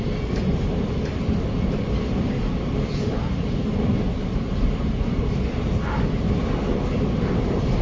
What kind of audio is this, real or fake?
real